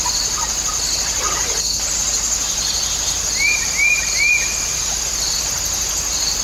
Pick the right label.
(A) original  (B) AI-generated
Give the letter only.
A